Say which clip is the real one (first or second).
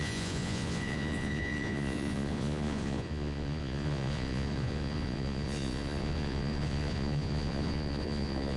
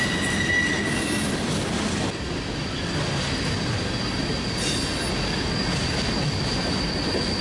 second